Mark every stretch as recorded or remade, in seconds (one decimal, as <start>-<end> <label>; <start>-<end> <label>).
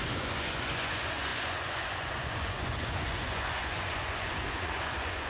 0.0-5.3 remade